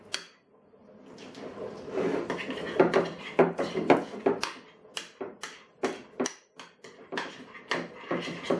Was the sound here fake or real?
real